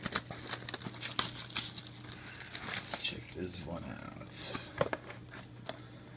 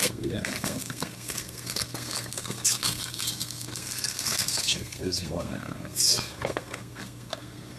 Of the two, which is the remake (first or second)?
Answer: second